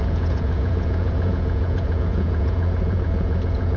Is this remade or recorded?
remade